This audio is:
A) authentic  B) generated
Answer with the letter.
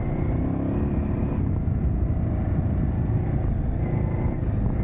A